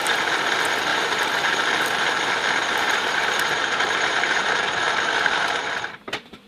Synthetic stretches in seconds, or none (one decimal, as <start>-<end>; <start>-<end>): 0.9-1.6; 2.7-4.8

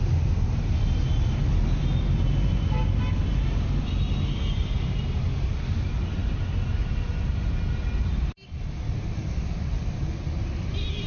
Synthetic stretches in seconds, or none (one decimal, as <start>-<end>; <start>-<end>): none

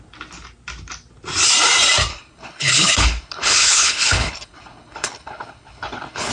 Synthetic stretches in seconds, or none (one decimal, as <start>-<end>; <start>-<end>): 2.1-6.3

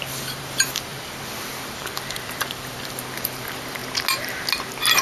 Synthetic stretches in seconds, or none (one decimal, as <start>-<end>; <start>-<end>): 0.0-3.8

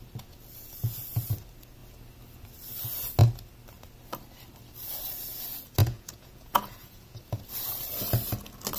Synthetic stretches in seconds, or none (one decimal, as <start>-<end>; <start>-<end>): 5.8-7.2

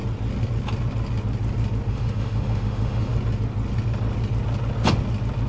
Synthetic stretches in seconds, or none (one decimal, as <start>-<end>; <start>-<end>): 1.9-3.1

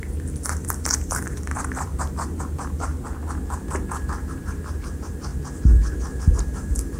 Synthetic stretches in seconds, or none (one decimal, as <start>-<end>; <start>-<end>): 0.0-2.9; 4.2-5.3; 6.3-7.0